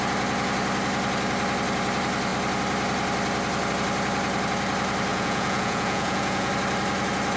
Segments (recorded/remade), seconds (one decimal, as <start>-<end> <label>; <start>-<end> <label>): 0.0-5.1 recorded; 5.1-6.5 remade; 6.5-7.4 recorded